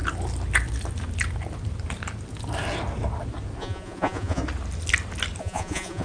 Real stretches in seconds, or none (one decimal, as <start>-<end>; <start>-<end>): 0.0-3.6; 4.4-5.4